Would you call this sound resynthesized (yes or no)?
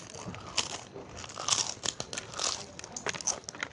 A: no